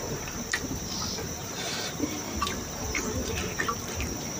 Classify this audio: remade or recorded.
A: remade